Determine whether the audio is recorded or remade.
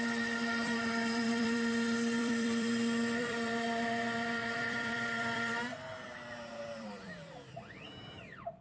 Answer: remade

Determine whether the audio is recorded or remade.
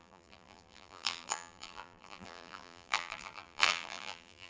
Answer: remade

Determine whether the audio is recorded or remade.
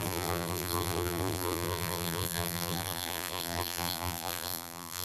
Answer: remade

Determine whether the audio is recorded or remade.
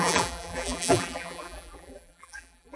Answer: remade